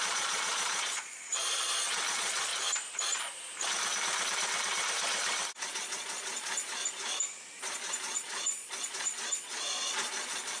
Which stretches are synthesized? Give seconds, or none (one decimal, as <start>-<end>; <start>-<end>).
0.0-1.4; 2.1-2.5; 5.7-6.8; 7.6-10.6